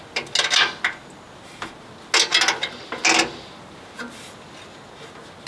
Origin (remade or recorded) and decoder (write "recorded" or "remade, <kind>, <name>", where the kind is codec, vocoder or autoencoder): recorded